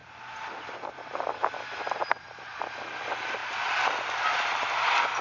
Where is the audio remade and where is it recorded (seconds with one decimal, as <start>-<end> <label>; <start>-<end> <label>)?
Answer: 0.0-1.8 remade; 1.8-3.4 recorded; 3.4-4.7 remade; 4.7-5.2 recorded